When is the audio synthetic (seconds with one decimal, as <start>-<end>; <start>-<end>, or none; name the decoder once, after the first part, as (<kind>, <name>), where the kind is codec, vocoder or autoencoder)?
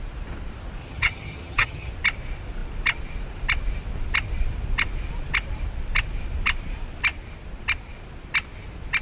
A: 0.8-1.9 (vocoder, HiFi-GAN)